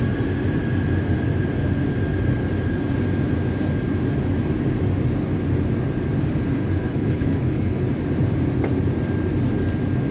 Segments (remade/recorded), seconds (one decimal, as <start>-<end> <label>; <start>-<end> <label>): 0.0-6.6 recorded; 6.6-7.9 remade; 7.9-10.1 recorded

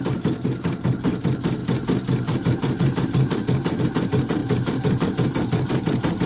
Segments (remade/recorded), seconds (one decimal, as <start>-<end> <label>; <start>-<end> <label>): 0.0-1.6 recorded; 1.6-3.8 remade; 3.8-4.4 recorded; 4.4-6.3 remade